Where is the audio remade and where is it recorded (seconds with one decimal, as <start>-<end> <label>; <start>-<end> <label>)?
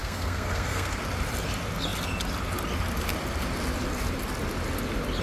0.0-0.9 remade; 0.9-5.2 recorded